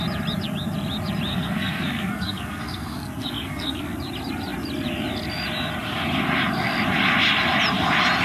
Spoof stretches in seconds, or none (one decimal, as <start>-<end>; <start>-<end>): 1.3-3.8